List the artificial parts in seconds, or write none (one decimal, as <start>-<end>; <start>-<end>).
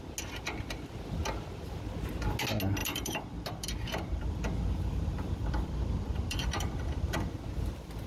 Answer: 2.8-7.3